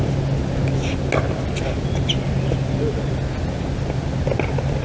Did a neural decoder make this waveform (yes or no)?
no